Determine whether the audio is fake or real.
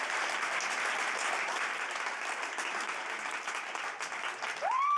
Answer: real